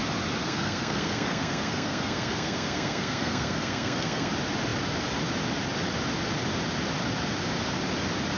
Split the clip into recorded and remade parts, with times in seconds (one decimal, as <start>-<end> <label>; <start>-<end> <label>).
0.0-0.4 recorded; 0.4-4.3 remade; 4.3-8.4 recorded